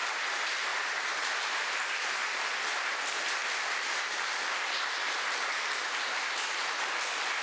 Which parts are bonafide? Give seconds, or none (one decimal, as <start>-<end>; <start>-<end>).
0.0-0.7; 1.3-3.4; 4.0-7.4